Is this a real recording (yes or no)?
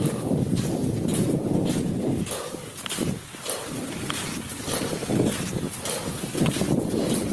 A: yes